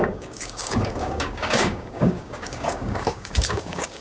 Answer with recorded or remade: remade